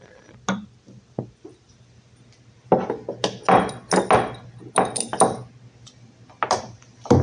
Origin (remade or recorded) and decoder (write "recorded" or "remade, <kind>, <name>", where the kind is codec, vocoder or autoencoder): recorded